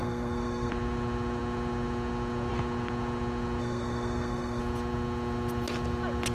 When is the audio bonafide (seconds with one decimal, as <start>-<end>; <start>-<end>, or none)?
0.7-3.6; 4.6-6.3